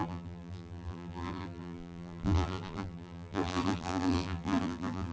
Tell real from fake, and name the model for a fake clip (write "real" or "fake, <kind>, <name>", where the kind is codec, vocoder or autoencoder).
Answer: fake, vocoder, BigVGAN v2